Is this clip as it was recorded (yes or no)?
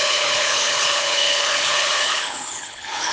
no